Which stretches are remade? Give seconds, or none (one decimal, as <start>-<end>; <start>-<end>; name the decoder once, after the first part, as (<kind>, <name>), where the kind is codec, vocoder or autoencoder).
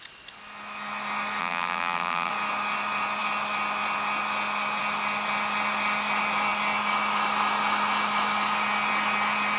1.4-2.3 (vocoder, BigVGAN v2)